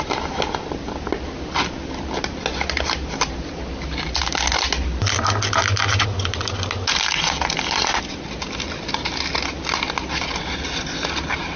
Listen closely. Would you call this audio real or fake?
real